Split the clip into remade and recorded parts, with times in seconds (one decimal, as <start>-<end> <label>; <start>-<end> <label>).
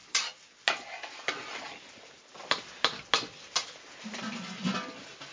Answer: 0.0-5.3 recorded